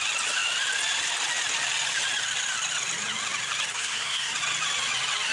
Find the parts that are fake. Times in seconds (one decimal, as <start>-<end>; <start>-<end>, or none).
3.7-4.3